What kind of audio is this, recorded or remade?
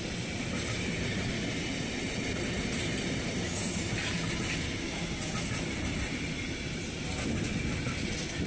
recorded